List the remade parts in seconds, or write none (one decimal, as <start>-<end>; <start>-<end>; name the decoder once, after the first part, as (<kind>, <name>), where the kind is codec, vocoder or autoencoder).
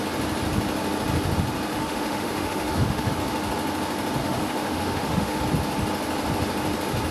1.7-3.1 (autoencoder, DAC-VAE); 4.2-5.4